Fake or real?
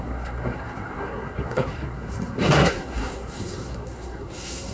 fake